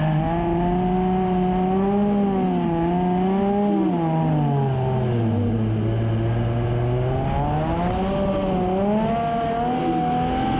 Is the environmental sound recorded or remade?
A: recorded